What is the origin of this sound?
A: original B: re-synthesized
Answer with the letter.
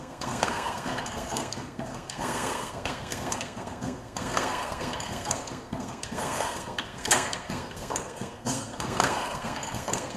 B